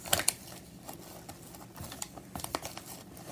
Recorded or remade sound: recorded